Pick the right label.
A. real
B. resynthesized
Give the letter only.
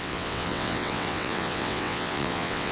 B